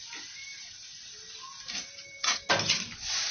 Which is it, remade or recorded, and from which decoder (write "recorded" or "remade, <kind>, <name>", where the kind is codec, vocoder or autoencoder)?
recorded